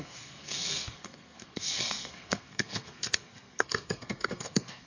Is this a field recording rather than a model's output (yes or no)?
no